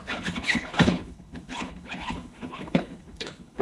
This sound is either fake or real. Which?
fake